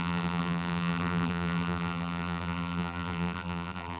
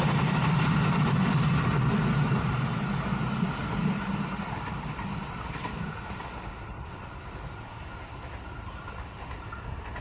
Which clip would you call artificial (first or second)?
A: first